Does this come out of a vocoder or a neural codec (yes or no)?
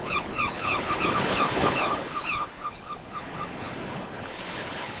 yes